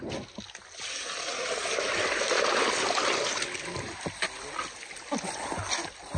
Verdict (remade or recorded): recorded